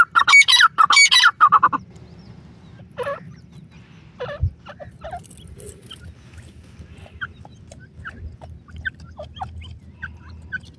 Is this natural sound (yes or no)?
yes